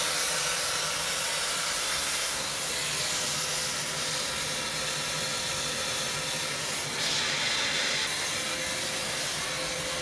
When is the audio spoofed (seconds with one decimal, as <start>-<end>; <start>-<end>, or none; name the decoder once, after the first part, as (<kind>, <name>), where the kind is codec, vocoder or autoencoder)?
1.8-2.6 (codec, SNAC)